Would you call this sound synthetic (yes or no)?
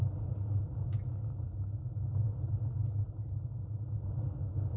no